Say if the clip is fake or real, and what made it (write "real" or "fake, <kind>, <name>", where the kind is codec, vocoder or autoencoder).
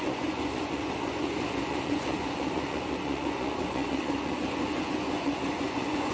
fake, vocoder, Vocos